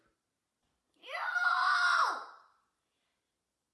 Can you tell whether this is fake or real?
fake